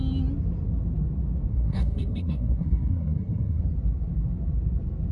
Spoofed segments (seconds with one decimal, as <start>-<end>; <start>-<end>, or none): 1.5-3.6